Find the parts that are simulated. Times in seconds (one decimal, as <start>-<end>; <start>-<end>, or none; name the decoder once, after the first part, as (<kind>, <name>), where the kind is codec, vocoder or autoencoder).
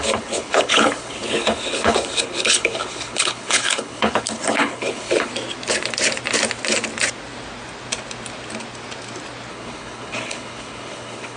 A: 0.0-5.3 (codec, HILCodec); 9.5-11.4